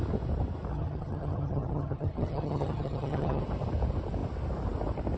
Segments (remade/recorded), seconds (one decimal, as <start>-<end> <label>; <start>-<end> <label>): 0.0-0.7 recorded; 0.7-3.4 remade; 3.4-5.2 recorded